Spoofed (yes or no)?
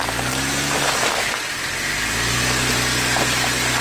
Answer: no